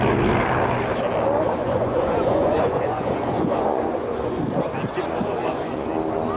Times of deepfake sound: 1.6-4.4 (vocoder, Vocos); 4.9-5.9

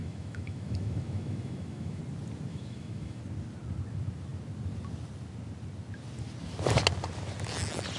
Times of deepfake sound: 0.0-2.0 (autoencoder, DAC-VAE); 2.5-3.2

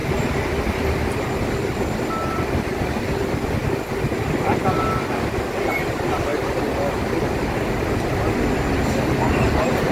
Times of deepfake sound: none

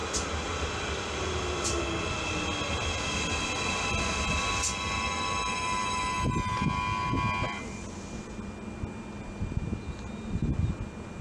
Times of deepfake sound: none

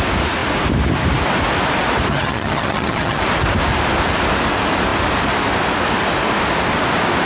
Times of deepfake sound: 2.1-3.2 (vocoder, HiFi-GAN)